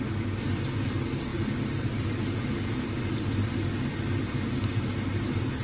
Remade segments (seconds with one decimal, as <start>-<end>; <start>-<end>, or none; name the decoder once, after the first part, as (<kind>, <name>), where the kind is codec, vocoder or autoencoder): 0.0-5.6 (vocoder, BigVGAN v2)